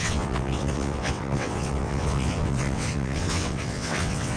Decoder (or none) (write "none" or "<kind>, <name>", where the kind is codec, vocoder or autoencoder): vocoder, WaveNeXt